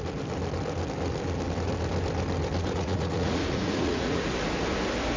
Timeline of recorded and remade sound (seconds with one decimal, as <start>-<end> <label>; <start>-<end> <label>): 0.0-2.6 recorded; 2.6-4.3 remade; 4.3-5.2 recorded